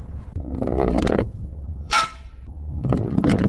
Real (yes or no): no